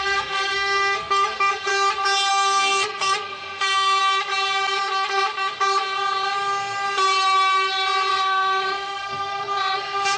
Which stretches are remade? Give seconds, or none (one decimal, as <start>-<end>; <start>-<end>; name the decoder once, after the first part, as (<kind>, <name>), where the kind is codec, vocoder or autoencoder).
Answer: 0.0-1.7 (codec, SNAC); 2.3-4.0; 8.1-10.2